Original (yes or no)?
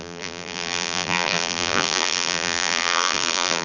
no